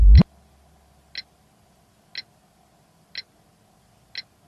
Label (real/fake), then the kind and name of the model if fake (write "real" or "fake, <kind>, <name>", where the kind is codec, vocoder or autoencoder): real